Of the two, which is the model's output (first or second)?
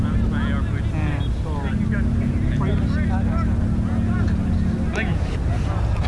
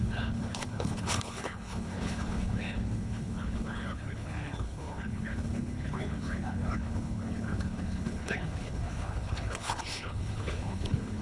second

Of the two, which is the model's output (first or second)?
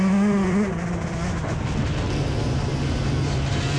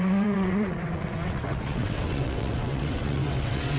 second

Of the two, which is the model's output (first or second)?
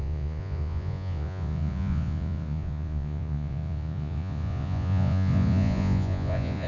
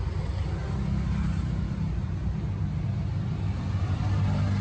first